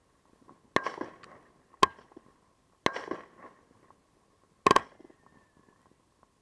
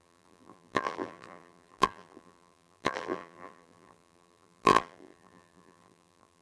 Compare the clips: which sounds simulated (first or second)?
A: second